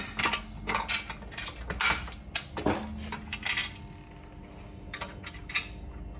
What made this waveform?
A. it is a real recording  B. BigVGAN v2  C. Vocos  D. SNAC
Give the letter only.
A